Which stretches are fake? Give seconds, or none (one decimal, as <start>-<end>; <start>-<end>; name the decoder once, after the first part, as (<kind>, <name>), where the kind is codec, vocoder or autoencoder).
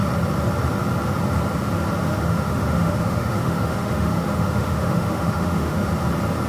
2.0-5.9 (autoencoder, DAC-VAE)